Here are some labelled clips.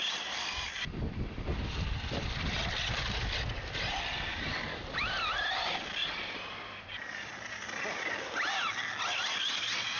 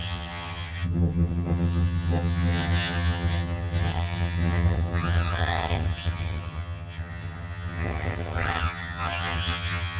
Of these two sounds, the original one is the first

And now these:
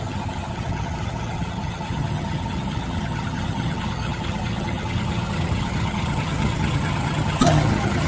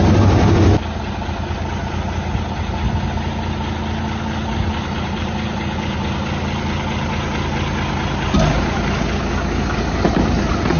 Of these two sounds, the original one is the second